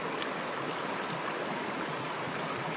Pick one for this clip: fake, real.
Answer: real